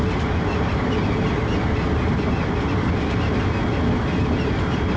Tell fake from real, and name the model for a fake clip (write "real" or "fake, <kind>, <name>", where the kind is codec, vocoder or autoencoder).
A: real